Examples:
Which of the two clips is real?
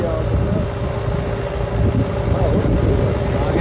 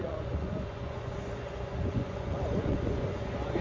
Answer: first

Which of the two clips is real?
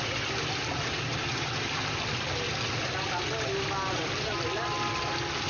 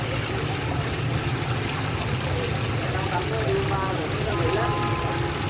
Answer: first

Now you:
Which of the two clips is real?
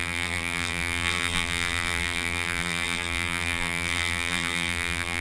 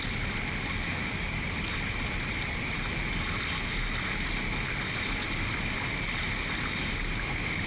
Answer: second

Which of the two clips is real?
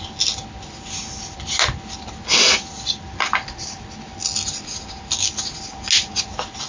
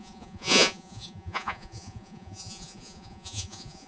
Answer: first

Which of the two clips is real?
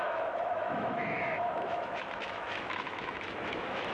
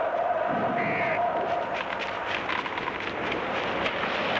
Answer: second